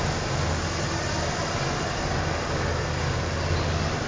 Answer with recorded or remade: recorded